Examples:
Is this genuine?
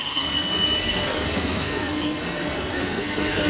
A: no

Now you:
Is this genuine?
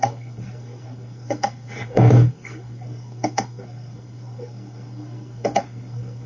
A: no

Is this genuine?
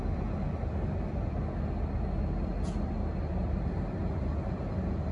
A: yes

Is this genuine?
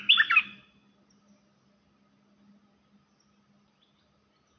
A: yes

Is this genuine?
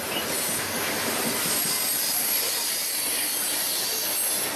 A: yes